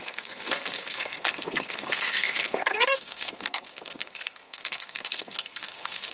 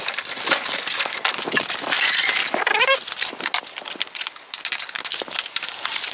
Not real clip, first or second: first